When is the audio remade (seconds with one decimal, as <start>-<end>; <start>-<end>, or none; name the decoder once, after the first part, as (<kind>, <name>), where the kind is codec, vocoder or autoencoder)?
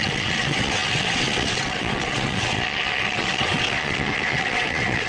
0.0-5.1 (vocoder, WaveNeXt)